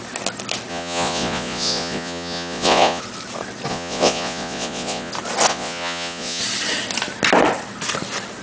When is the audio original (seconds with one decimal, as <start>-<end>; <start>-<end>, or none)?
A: 0.0-0.7; 3.0-3.7; 5.1-5.5; 6.4-8.4

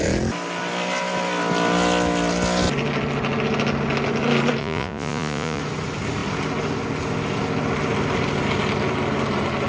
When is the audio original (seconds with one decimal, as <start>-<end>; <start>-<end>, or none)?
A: 0.0-4.6; 5.6-9.7